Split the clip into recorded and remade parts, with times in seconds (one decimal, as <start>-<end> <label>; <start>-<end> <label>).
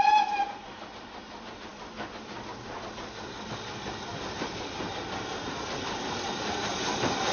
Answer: 0.0-7.3 recorded